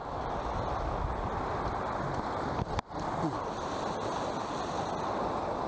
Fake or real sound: real